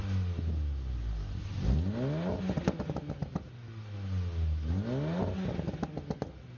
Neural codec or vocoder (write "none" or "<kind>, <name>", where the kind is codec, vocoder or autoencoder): none